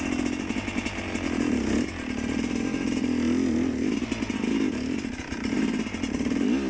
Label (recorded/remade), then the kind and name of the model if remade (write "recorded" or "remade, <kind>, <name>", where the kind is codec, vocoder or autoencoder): recorded